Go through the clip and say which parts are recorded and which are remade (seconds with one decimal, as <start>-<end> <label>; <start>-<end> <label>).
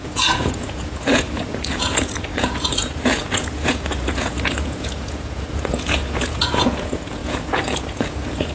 0.0-8.5 remade